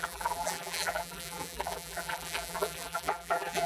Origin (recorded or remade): remade